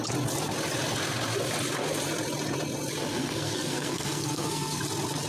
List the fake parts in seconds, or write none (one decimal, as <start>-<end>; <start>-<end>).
3.1-4.8

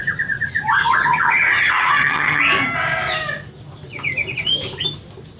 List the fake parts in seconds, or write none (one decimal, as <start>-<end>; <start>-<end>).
1.1-2.4

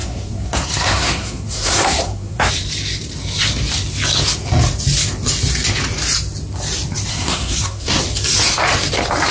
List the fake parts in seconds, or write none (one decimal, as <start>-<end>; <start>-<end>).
0.0-2.5; 7.1-8.0

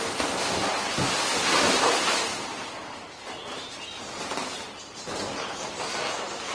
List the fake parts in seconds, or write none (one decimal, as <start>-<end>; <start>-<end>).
1.3-1.9; 2.3-3.7

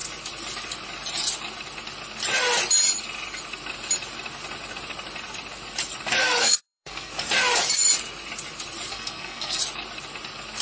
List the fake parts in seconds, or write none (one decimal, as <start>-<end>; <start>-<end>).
6.2-7.1; 8.9-9.6

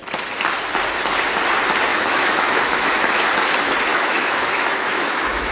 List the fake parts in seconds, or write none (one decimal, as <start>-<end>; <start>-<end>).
1.9-2.9; 3.9-5.5

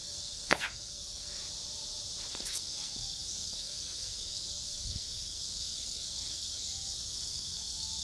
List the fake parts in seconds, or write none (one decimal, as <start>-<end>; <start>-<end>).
0.0-1.4; 2.3-8.0

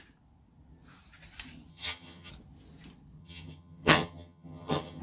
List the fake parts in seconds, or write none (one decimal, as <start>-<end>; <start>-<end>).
1.7-2.3; 3.2-5.0